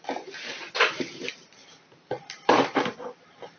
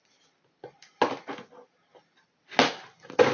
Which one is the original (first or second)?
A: second